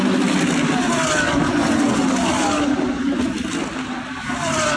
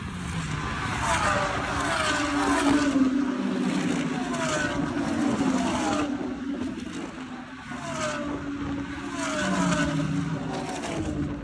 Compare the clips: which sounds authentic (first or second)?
second